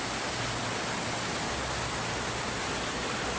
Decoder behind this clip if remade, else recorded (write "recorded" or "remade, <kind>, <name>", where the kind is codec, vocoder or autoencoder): recorded